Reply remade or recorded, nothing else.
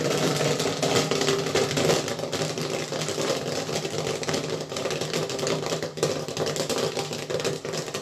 recorded